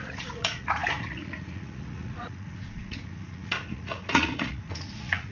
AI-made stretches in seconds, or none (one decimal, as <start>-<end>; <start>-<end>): 0.0-5.3